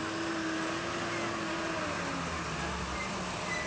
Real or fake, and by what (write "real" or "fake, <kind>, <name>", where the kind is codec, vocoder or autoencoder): real